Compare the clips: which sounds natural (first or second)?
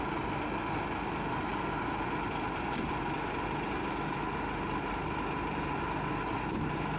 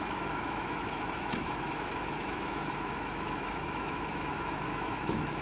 first